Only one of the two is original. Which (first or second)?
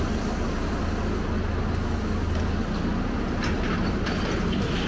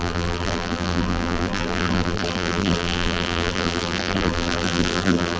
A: first